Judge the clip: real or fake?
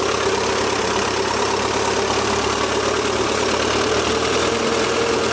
fake